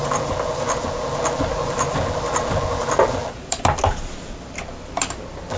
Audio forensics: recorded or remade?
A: remade